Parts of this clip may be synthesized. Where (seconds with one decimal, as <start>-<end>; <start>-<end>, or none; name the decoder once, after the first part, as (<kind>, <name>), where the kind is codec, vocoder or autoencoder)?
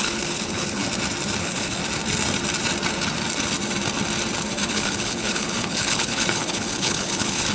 0.0-0.8 (codec, HILCodec); 1.4-1.8; 4.7-7.5